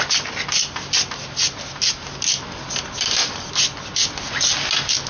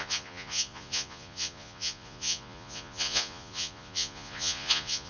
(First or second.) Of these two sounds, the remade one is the second